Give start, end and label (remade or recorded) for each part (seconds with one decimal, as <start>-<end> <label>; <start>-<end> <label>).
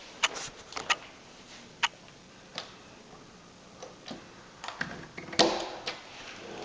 0.0-6.6 recorded